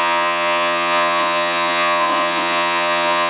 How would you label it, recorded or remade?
remade